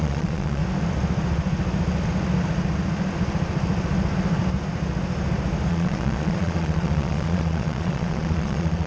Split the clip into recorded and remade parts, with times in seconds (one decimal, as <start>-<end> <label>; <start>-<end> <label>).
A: 0.0-0.6 remade; 0.6-5.7 recorded; 5.7-8.9 remade